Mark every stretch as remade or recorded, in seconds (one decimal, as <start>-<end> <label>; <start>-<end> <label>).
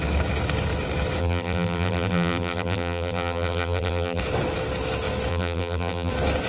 0.0-1.2 recorded; 1.2-4.2 remade; 4.2-5.3 recorded; 5.3-6.1 remade; 6.1-6.5 recorded